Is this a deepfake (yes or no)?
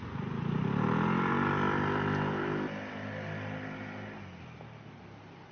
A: no